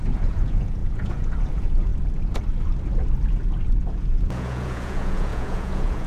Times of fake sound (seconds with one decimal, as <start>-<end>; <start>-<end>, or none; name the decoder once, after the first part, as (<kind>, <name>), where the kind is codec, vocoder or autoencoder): 0.0-1.9 (vocoder, Vocos); 3.8-6.1